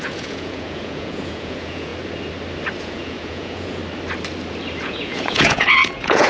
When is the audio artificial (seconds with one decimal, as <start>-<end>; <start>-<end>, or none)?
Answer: 0.0-1.9; 2.8-3.8; 4.8-6.3